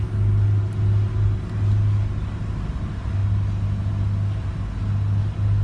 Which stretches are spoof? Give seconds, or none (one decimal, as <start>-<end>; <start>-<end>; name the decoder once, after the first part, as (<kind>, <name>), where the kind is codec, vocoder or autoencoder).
none